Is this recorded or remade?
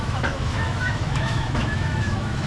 remade